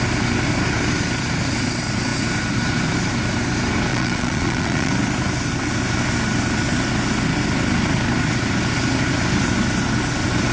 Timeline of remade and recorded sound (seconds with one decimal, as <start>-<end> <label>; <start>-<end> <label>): 0.0-3.9 recorded; 3.9-4.9 remade; 4.9-10.5 recorded